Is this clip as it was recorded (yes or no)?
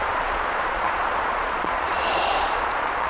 no